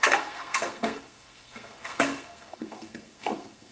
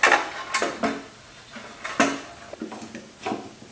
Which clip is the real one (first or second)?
second